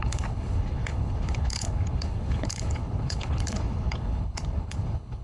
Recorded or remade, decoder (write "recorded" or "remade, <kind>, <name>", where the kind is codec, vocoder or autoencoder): remade, codec, HILCodec